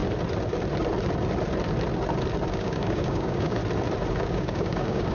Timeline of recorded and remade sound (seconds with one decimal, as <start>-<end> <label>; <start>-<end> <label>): 0.0-2.5 recorded; 2.5-3.6 remade; 3.6-4.1 recorded; 4.1-5.1 remade